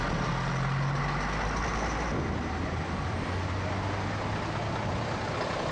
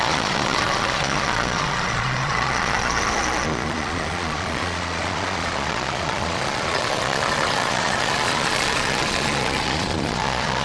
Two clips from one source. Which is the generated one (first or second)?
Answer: second